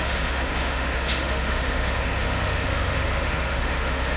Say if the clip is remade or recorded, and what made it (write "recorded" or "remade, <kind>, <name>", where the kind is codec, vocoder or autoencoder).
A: remade, autoencoder, DAC-VAE